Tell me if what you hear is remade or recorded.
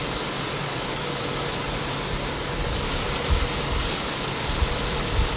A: recorded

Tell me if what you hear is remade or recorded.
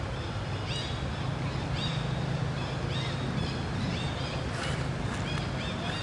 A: recorded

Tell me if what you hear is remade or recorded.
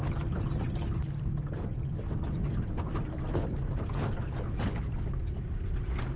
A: recorded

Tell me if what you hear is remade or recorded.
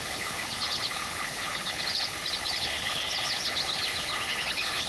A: remade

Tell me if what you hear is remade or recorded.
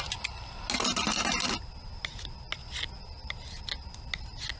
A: recorded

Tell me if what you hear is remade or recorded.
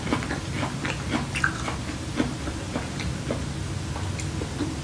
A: recorded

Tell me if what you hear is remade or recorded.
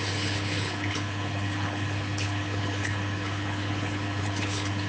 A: remade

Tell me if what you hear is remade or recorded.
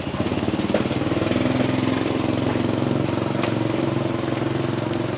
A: recorded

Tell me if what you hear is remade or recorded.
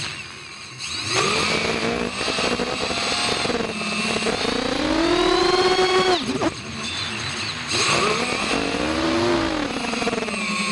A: recorded